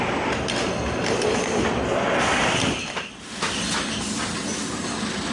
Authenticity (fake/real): real